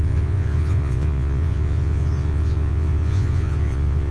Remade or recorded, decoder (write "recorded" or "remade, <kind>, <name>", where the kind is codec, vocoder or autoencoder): remade, vocoder, Vocos